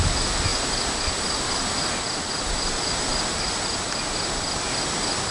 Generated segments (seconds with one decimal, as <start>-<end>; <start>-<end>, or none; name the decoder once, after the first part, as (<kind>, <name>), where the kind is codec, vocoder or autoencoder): none